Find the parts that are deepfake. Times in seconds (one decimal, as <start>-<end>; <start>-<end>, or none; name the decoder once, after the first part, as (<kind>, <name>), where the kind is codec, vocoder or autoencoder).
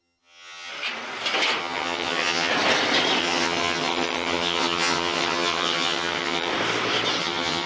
0.0-0.7 (vocoder, HiFi-GAN); 1.6-2.5; 3.2-6.5; 7.2-7.7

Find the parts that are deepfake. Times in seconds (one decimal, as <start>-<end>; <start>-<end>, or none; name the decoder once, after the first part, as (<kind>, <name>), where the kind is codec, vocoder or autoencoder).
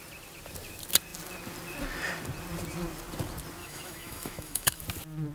3.6-4.8 (autoencoder, DAC-VAE)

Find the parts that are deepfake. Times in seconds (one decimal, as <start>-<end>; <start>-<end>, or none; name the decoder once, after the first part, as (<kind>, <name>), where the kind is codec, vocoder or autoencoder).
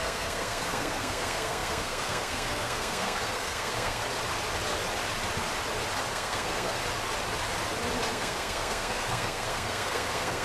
0.0-4.0 (codec, SNAC); 6.1-6.8; 8.1-10.4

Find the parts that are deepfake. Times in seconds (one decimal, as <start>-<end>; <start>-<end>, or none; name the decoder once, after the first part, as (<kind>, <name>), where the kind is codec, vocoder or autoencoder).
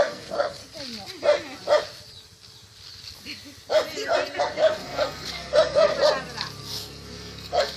0.0-0.6 (codec, SNAC); 4.4-5.9; 6.6-7.8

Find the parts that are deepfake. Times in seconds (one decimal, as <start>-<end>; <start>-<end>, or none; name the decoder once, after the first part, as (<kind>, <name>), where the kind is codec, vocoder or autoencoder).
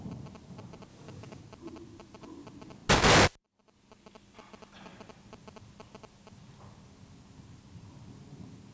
0.9-1.4 (codec, DAC)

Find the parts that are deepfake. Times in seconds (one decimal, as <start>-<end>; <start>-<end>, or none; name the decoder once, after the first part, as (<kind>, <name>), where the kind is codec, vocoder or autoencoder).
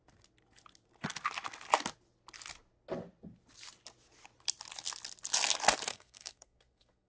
5.9-7.1 (codec, SNAC)